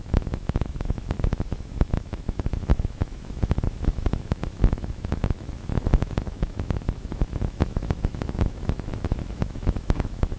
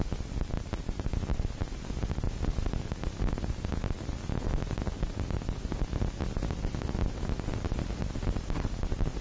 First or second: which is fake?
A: first